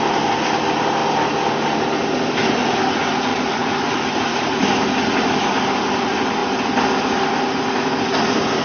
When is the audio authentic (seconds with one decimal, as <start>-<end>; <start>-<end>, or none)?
0.0-3.3; 3.9-8.6